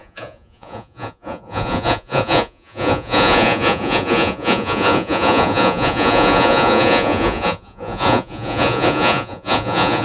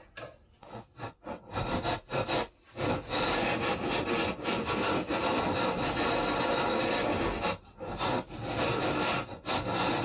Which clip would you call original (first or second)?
second